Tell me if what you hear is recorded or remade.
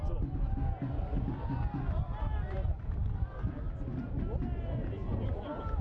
recorded